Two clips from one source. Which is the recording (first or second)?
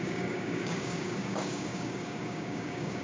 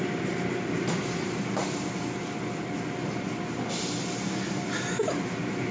second